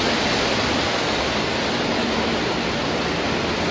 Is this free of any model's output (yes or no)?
yes